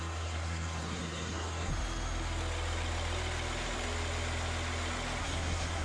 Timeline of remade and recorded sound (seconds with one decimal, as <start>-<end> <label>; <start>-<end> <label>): 0.0-1.7 remade; 1.7-5.2 recorded; 5.2-5.8 remade